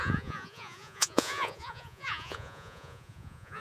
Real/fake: fake